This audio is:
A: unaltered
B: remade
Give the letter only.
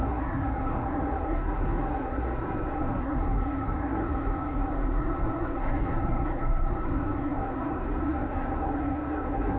B